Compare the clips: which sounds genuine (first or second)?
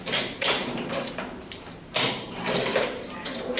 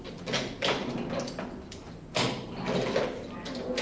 second